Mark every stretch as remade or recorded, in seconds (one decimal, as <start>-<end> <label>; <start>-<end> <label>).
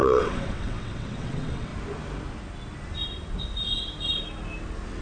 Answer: 0.0-1.7 remade; 1.7-5.0 recorded